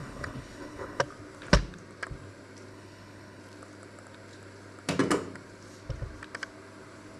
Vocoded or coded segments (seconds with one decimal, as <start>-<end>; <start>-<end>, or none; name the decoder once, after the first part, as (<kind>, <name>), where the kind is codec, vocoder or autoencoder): 0.0-1.0 (codec, HILCodec); 2.7-3.4

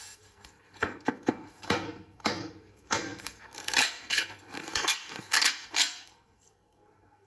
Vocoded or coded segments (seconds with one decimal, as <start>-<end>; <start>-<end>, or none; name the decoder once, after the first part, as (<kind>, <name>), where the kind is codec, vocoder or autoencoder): 0.0-7.3 (codec, SNAC)

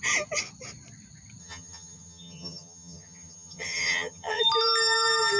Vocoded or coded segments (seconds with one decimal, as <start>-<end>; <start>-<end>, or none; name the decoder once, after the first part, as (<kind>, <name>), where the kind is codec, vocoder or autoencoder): 1.4-4.4 (vocoder, HiFi-GAN)

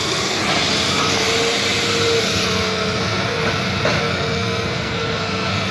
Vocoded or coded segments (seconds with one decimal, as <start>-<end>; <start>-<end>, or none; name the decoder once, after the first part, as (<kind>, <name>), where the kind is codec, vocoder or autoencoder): 0.0-0.4 (codec, SNAC); 2.2-3.4; 4.0-5.7